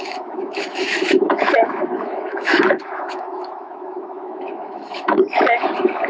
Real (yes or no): no